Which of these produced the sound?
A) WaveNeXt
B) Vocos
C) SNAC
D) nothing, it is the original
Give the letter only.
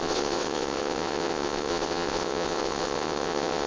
A